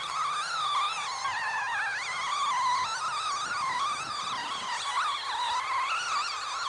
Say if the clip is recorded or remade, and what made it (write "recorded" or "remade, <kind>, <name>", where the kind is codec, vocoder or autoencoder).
recorded